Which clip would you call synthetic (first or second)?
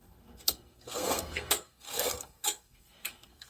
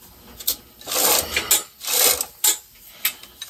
first